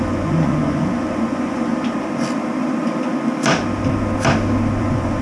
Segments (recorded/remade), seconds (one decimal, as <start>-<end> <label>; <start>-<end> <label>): 0.0-1.7 remade; 1.7-4.8 recorded; 4.8-5.2 remade